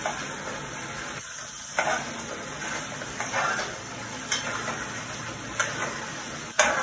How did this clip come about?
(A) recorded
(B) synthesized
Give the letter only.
A